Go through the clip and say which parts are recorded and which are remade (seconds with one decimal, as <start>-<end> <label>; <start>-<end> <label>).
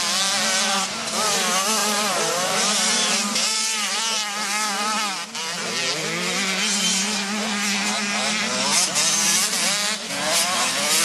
0.0-1.8 recorded; 1.8-4.0 remade; 4.0-11.0 recorded